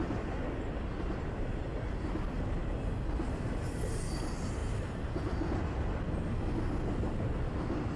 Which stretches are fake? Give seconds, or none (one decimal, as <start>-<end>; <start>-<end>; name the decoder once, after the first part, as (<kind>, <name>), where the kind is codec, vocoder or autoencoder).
none